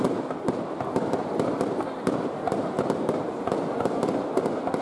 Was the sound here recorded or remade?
recorded